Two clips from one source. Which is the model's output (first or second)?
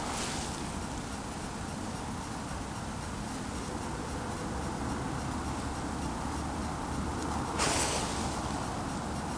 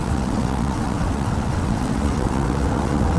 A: second